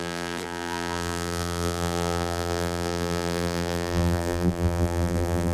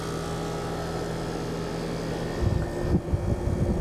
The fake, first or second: first